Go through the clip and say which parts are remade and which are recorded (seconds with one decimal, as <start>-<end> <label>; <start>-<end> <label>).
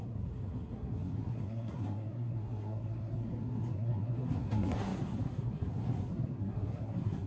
0.0-7.3 remade